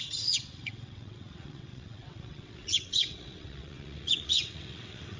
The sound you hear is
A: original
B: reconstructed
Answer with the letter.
B